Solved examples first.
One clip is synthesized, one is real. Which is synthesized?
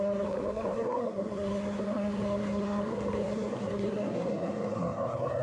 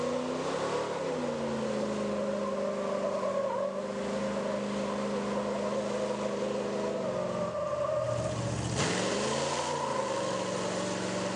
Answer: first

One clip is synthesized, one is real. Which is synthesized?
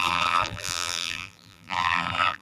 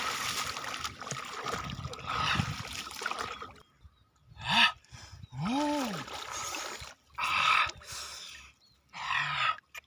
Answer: first